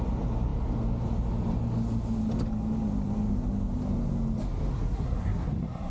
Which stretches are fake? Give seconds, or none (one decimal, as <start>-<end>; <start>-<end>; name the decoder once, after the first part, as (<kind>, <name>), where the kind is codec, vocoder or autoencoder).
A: 4.7-5.9 (codec, SNAC)